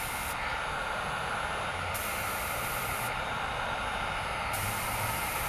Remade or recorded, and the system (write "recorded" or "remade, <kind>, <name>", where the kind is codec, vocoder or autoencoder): remade, vocoder, BigVGAN v2